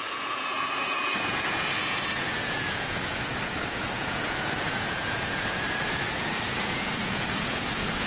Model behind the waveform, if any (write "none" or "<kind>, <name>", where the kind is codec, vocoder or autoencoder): vocoder, Vocos